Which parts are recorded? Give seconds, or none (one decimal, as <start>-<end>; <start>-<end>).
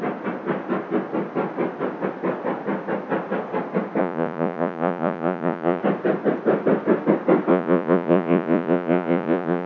0.0-4.0; 5.8-7.5